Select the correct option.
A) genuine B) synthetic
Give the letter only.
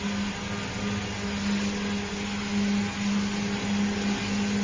A